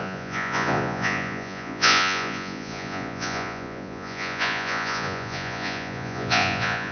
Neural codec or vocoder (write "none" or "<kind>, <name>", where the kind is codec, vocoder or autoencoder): vocoder, Vocos